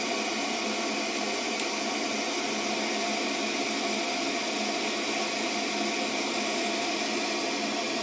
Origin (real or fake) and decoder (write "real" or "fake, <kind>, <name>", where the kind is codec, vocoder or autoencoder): real